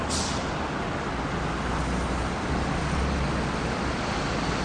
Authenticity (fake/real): real